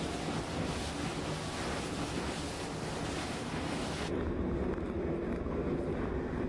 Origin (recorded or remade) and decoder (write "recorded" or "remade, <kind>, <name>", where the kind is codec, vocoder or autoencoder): recorded